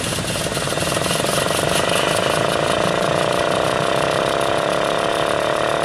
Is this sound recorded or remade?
recorded